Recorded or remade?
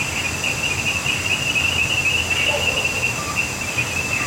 recorded